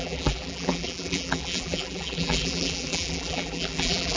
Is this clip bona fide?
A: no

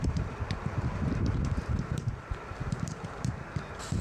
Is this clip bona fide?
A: no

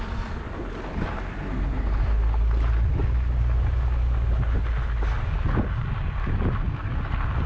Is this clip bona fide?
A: yes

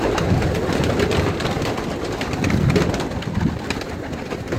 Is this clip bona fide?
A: yes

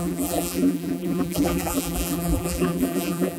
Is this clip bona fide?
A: no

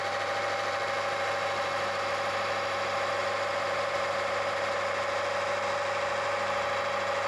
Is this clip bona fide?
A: yes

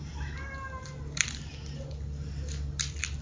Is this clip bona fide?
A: yes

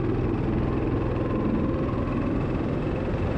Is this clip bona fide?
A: yes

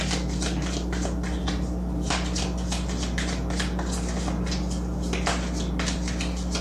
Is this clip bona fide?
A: yes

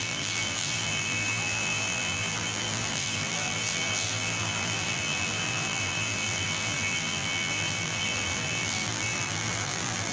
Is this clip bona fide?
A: no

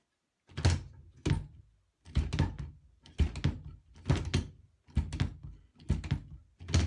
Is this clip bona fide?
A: yes